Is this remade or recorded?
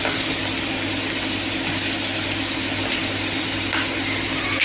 recorded